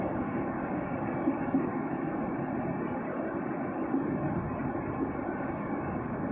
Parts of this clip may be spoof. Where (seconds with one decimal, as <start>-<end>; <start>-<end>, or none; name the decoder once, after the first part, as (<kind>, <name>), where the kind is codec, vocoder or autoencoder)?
0.0-1.7 (codec, DAC); 5.4-6.3